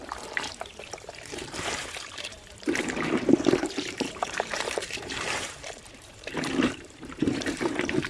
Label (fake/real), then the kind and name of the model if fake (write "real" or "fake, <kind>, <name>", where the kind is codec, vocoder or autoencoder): fake, vocoder, BigVGAN v2